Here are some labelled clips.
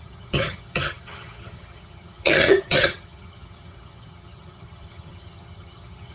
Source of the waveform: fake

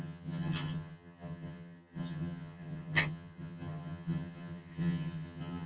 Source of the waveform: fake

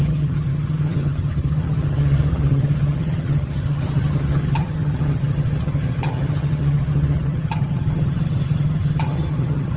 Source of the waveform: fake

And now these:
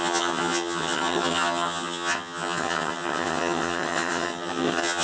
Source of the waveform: fake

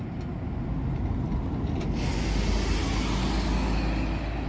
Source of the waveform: real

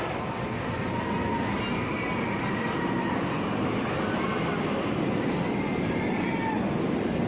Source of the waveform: real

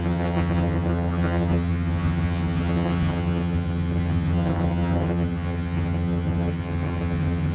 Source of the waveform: fake